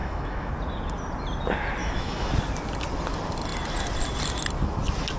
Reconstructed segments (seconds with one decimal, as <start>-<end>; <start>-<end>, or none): 0.0-0.5; 1.8-2.3